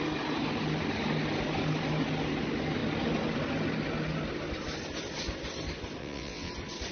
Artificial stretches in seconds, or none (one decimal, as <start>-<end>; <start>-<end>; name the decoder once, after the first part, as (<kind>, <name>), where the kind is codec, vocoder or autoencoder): 6.0-6.5 (vocoder, WaveNeXt)